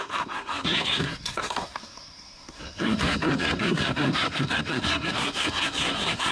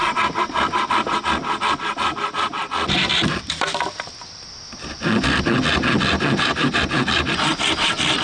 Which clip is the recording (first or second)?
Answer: second